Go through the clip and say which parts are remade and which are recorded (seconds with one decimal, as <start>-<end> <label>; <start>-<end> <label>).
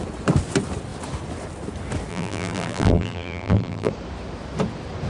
0.0-2.1 recorded; 2.1-3.9 remade; 3.9-5.1 recorded